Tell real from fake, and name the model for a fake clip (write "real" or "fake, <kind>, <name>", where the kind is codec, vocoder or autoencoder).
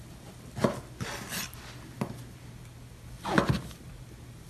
real